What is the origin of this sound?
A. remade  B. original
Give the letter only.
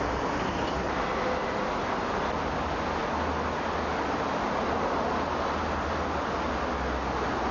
B